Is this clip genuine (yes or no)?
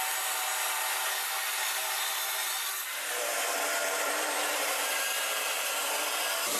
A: no